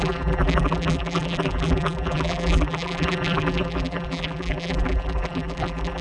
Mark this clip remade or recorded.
remade